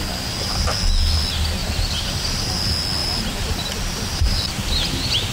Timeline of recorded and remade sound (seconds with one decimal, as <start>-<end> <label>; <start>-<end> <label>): 0.0-1.6 recorded; 1.6-2.1 remade; 2.1-3.0 recorded; 3.0-4.5 remade; 4.5-5.3 recorded